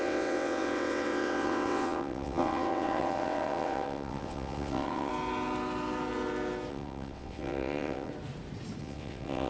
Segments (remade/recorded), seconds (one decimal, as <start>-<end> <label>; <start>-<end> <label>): 0.0-5.1 remade; 5.1-6.7 recorded; 6.7-8.1 remade; 8.1-8.8 recorded; 8.8-9.5 remade